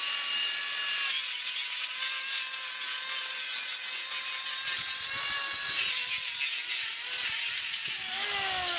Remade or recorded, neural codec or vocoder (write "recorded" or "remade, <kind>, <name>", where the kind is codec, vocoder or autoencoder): recorded